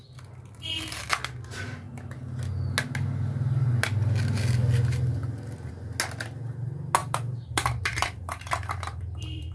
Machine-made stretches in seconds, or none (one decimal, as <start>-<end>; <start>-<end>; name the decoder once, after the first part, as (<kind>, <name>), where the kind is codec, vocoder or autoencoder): 7.0-9.5 (vocoder, BigVGAN v2)